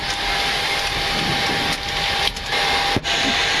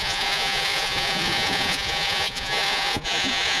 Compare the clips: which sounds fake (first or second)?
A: second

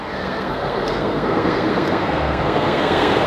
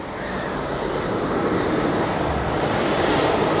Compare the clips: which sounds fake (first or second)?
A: first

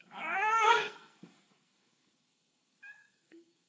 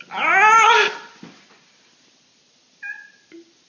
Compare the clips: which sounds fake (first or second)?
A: first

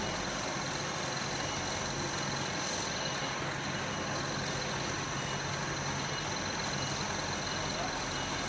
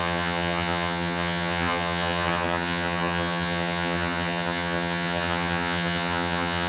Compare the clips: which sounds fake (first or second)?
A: second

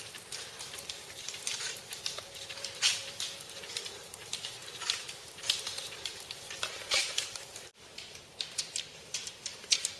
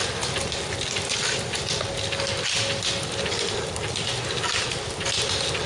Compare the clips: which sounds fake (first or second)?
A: first